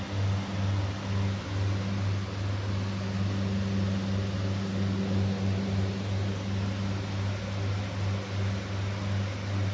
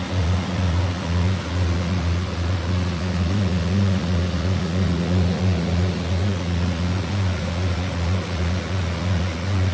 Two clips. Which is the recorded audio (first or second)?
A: first